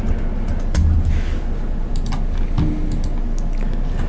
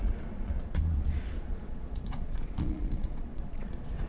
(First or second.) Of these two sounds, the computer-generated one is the second